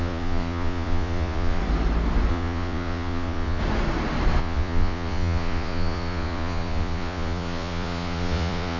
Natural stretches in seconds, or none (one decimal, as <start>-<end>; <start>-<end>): 1.6-2.3; 3.6-4.4